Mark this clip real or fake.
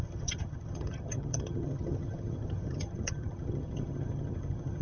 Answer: fake